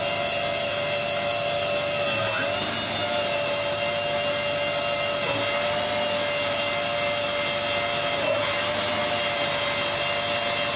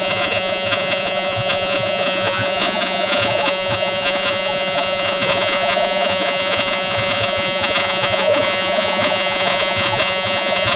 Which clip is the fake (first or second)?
second